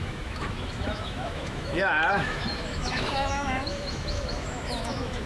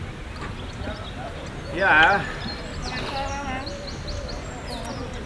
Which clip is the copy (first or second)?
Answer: first